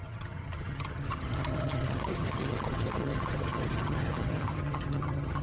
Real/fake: fake